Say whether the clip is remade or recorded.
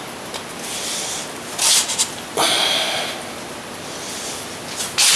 recorded